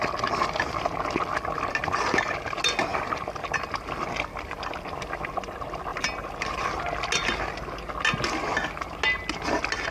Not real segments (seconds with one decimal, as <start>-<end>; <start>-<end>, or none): 5.9-6.8

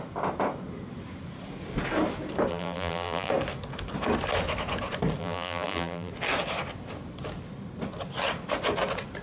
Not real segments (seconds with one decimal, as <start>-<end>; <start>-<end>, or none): 2.5-3.3; 5.2-6.1

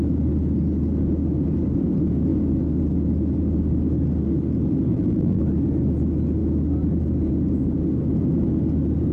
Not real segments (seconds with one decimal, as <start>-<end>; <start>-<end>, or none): 4.9-5.4

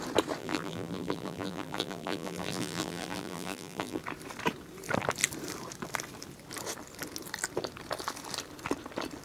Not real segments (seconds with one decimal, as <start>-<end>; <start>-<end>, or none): 0.4-4.0

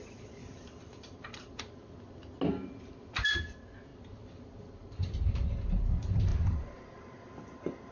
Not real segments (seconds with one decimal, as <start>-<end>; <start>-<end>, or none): 0.4-1.6